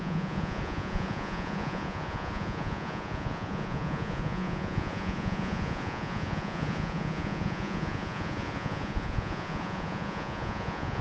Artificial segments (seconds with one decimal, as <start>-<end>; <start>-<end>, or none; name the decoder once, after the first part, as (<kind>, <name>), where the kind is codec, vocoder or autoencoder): 0.0-11.0 (vocoder, Vocos)